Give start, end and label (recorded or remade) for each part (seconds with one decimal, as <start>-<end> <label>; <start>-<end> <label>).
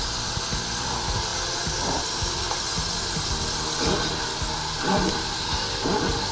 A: 0.0-6.3 recorded